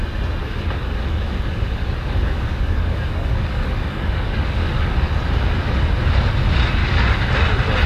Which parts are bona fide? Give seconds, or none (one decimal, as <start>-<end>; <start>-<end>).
0.0-0.4; 5.1-6.8; 7.3-7.9